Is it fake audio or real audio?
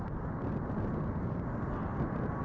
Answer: real